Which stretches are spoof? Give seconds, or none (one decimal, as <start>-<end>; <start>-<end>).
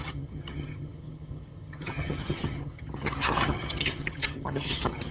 0.0-5.1